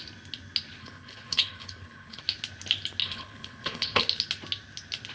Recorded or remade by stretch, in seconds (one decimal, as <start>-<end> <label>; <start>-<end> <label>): 0.0-0.8 recorded; 0.8-2.2 remade; 2.2-3.0 recorded; 3.0-4.0 remade; 4.0-5.1 recorded